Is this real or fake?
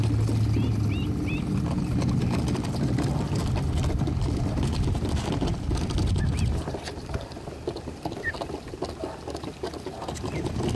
real